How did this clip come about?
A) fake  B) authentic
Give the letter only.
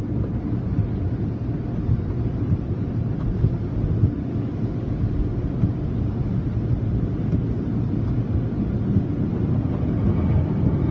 B